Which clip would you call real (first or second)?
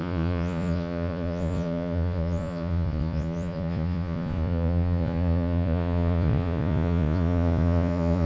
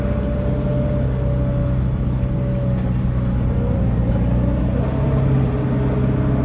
second